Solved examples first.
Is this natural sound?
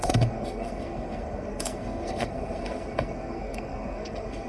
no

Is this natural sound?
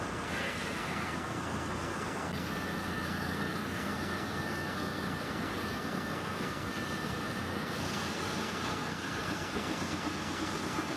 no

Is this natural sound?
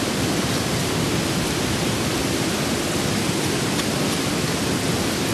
yes